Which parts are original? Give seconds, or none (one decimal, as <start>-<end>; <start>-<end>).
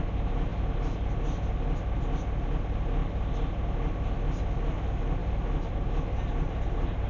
0.0-5.2